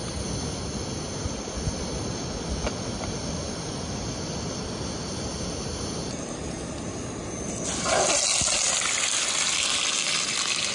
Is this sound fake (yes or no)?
no